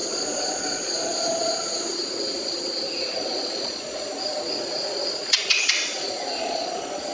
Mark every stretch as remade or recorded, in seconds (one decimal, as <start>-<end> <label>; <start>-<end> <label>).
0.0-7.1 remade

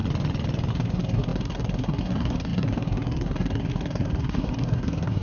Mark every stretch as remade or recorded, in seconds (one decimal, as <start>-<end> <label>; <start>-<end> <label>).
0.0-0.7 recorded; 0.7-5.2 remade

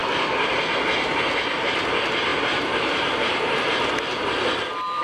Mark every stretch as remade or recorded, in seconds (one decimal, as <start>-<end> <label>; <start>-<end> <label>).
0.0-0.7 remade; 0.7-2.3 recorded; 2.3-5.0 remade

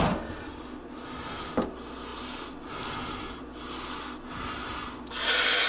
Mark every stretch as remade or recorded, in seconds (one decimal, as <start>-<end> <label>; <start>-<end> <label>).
0.0-5.7 recorded

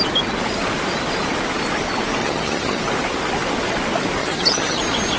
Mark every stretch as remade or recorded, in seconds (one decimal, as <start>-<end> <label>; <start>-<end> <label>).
0.0-2.2 recorded; 2.2-2.8 remade; 2.8-4.2 recorded; 4.2-4.8 remade; 4.8-5.2 recorded

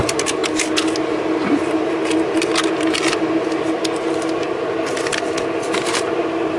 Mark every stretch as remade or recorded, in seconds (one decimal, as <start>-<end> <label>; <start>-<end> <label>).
0.0-0.4 remade; 0.4-1.0 recorded; 1.0-2.0 remade; 2.0-6.0 recorded; 6.0-6.6 remade

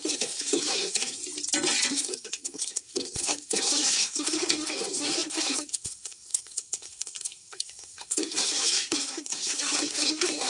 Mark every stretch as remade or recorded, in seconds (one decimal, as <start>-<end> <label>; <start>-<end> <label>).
0.0-1.2 remade; 1.2-1.9 recorded; 1.9-10.5 remade

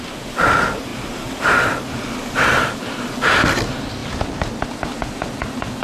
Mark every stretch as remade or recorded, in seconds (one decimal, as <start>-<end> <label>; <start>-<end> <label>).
0.0-5.8 recorded